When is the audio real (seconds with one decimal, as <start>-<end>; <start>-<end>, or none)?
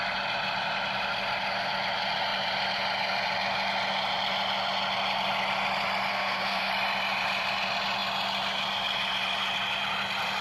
0.0-6.1; 6.7-10.4